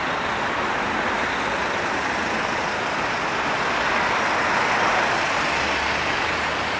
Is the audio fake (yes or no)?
no